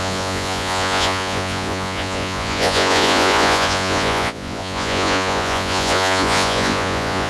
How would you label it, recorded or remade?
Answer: remade